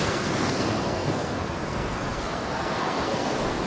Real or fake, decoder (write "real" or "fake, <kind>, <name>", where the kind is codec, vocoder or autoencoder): fake, codec, SNAC